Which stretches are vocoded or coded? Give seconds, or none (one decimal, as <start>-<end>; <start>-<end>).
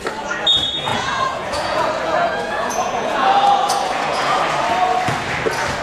0.9-4.4